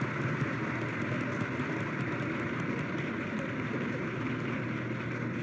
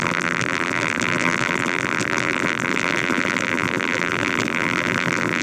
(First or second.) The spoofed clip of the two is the second